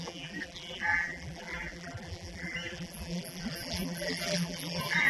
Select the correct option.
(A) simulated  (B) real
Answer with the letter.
A